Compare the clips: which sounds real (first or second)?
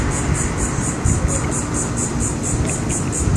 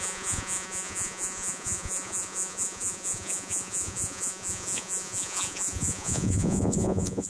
first